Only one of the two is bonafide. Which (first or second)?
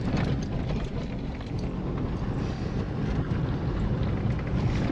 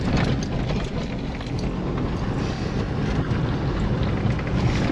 second